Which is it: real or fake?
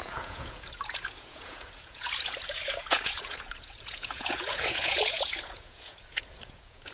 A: fake